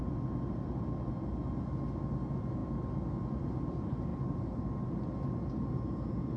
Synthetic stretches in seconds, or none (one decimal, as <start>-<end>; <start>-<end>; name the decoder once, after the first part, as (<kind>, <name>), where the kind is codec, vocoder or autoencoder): none